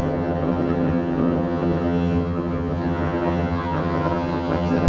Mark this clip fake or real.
fake